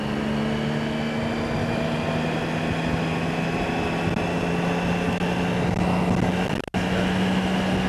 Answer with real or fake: real